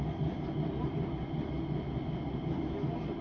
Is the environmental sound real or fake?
real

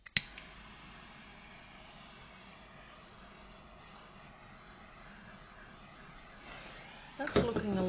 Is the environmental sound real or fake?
real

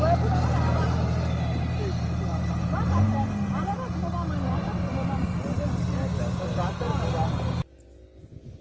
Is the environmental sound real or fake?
real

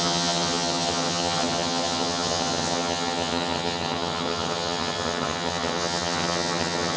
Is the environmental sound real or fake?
fake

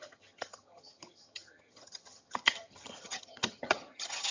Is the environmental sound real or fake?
fake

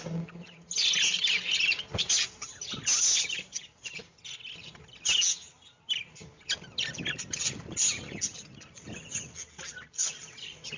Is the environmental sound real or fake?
real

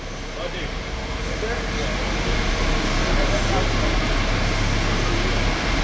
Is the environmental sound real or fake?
real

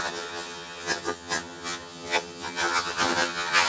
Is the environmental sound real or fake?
fake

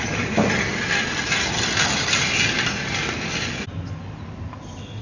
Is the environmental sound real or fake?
real